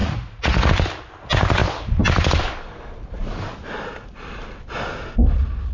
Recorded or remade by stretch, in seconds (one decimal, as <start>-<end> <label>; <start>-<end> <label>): 0.0-0.7 remade; 0.7-5.7 recorded